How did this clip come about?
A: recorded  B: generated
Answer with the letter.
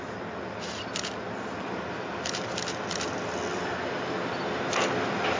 A